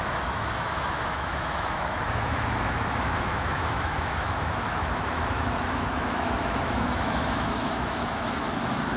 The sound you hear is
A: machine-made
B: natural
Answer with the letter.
A